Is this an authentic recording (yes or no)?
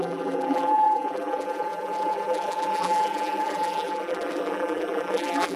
no